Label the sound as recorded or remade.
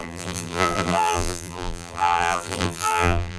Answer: remade